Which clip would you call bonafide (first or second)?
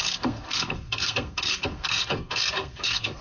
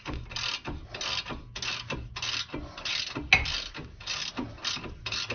second